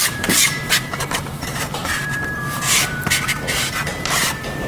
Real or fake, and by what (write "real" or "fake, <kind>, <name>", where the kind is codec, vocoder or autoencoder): fake, vocoder, BigVGAN v2